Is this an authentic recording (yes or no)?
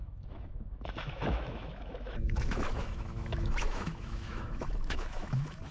no